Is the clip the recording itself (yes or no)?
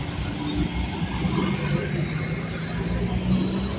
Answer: yes